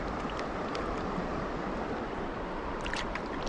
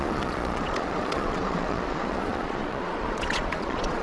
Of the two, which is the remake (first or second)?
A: second